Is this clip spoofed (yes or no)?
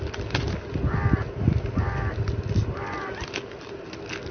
no